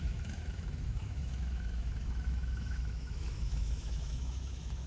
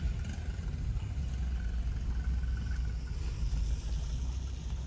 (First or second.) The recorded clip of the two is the second